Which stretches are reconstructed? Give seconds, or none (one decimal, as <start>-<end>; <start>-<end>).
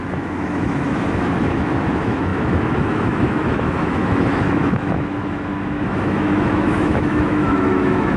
0.0-8.2